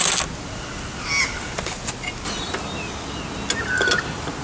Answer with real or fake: real